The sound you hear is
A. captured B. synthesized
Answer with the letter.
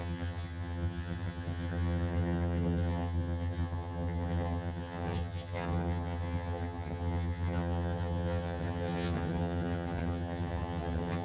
B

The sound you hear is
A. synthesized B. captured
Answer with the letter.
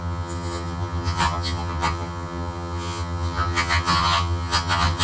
A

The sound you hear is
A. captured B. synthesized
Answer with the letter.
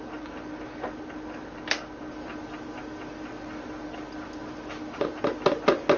A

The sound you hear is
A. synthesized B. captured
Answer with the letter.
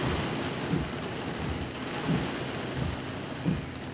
B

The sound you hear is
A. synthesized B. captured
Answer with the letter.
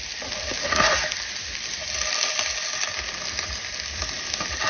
B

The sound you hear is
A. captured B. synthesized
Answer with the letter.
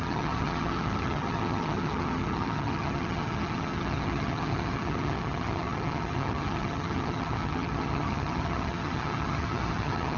B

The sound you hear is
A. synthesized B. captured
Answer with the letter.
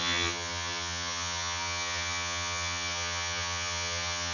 A